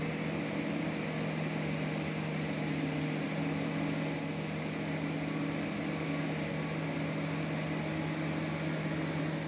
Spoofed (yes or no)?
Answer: no